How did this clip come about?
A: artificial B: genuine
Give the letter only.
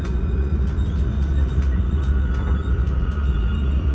A